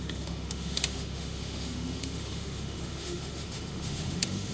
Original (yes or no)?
no